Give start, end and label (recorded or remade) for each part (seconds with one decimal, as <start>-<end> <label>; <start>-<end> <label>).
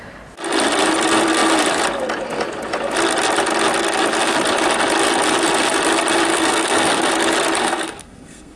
0.0-6.3 recorded; 6.3-7.1 remade; 7.1-7.6 recorded; 7.6-8.6 remade